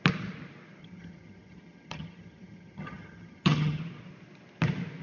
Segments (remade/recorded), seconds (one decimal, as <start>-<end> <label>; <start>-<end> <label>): 0.0-0.8 recorded; 0.8-3.8 remade; 3.8-5.0 recorded